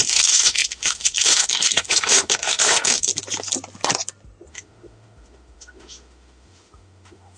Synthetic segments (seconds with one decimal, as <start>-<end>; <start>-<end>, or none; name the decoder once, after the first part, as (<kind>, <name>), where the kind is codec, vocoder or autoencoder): 0.0-3.1 (autoencoder, DAC-VAE); 4.5-7.4